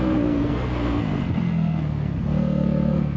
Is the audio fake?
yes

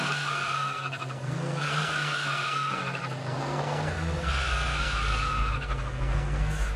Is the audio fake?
yes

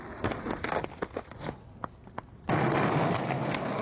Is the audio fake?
no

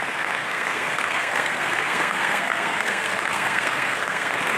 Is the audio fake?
yes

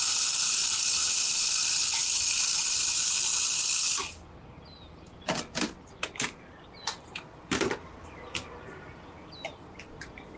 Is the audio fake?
no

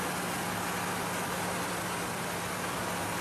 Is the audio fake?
no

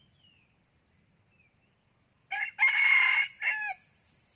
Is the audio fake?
no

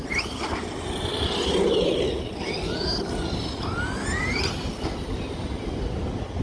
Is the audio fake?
no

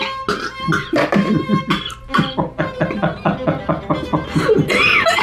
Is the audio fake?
no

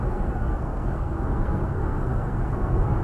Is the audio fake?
yes